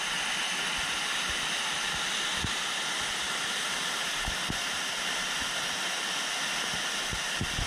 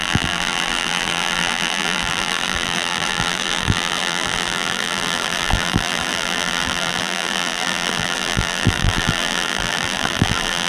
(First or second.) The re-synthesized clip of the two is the second